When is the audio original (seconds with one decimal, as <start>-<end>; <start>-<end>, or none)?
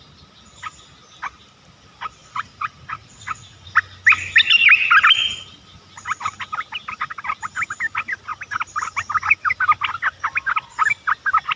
0.0-2.2; 3.7-11.6